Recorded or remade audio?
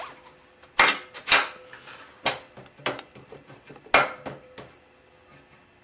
recorded